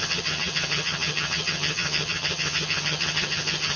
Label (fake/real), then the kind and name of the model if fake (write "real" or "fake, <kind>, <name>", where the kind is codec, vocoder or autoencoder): fake, vocoder, HiFi-GAN